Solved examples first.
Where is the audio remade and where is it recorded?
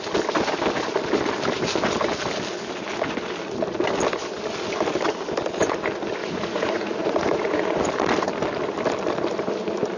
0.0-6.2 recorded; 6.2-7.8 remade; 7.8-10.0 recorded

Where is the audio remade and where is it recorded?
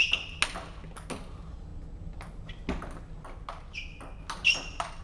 0.0-5.0 recorded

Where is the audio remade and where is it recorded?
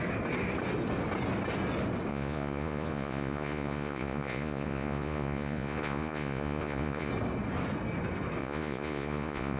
0.0-2.1 recorded; 2.1-7.1 remade; 7.1-8.4 recorded; 8.4-9.6 remade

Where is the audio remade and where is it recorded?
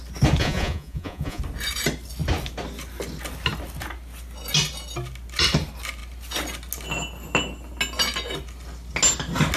0.0-0.4 recorded; 0.4-1.4 remade; 1.4-9.6 recorded